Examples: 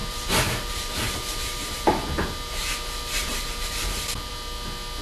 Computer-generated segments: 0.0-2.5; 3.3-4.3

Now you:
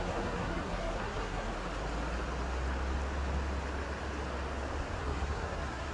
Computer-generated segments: 0.0-1.5; 5.0-5.9

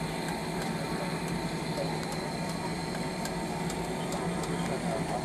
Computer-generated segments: none